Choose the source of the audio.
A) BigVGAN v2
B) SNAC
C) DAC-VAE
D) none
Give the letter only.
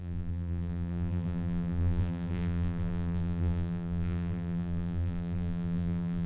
A